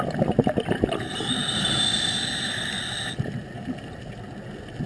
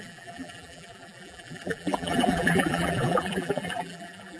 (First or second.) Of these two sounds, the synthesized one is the second